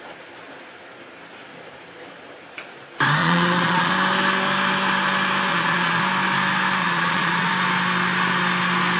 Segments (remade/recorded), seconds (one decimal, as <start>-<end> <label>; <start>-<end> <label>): 0.0-3.2 recorded; 3.2-3.9 remade; 3.9-5.5 recorded; 5.5-6.0 remade; 6.0-6.8 recorded; 6.8-7.5 remade; 7.5-9.0 recorded